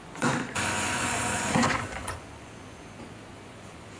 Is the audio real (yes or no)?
no